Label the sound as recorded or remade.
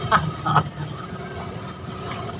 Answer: recorded